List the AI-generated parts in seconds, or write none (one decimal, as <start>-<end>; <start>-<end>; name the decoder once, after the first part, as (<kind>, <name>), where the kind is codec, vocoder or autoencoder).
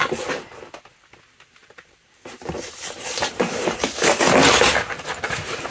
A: 1.6-3.8 (vocoder, BigVGAN v2)